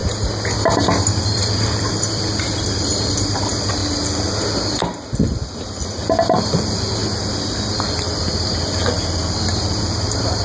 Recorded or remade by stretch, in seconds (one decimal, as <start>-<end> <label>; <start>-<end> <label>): 0.0-1.2 recorded; 1.2-3.8 remade; 3.8-6.4 recorded; 6.4-7.0 remade; 7.0-8.6 recorded; 8.6-10.4 remade

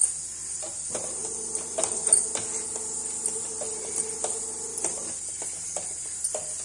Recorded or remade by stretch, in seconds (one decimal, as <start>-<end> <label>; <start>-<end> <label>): 0.0-6.6 recorded

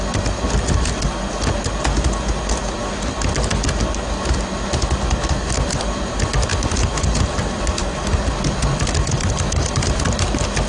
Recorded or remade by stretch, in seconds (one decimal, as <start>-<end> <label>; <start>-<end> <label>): 0.0-6.5 recorded; 6.5-10.0 remade; 10.0-10.7 recorded

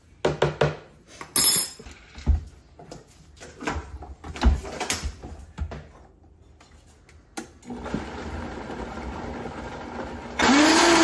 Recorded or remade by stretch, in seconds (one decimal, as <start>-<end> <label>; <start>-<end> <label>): 0.0-11.0 recorded

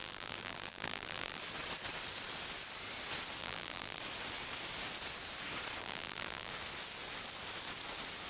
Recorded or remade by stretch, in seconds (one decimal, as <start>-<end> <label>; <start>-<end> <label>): 0.0-1.4 remade; 1.4-3.4 recorded; 3.4-4.0 remade; 4.0-5.8 recorded; 5.8-6.5 remade; 6.5-8.3 recorded

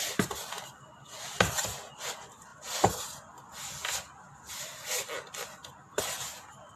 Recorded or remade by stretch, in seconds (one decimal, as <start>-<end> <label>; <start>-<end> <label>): 0.0-6.8 recorded

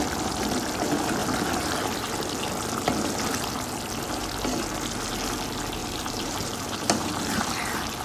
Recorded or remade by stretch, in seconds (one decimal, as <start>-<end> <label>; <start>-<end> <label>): 0.0-5.8 recorded; 5.8-7.4 remade; 7.4-8.0 recorded